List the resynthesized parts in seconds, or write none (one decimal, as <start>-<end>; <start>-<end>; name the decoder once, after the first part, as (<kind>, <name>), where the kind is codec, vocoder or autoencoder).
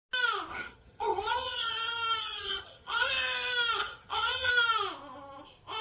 0.5-1.7 (vocoder, HiFi-GAN); 2.2-3.1; 3.8-4.5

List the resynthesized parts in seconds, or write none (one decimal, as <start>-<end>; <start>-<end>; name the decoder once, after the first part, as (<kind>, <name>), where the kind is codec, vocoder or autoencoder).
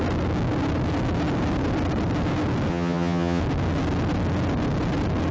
2.7-3.4 (vocoder, HiFi-GAN)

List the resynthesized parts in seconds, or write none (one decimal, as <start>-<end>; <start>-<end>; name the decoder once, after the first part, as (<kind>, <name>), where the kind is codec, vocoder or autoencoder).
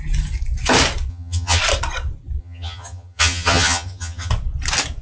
1.1-1.6 (vocoder, HiFi-GAN); 2.4-4.3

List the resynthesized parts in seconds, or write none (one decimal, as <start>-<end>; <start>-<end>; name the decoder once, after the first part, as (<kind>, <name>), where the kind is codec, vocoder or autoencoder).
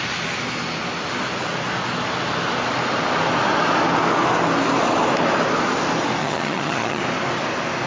6.2-7.0 (vocoder, HiFi-GAN)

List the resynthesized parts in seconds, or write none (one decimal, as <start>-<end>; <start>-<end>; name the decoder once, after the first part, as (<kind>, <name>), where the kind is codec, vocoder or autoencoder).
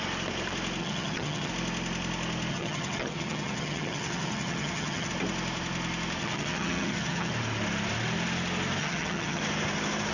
0.8-1.5 (vocoder, HiFi-GAN); 2.5-5.1; 6.2-7.3; 8.8-9.4